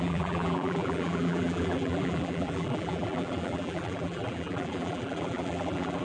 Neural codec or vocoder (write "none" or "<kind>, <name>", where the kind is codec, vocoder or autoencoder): vocoder, BigVGAN v2